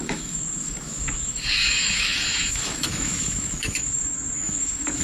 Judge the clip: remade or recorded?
remade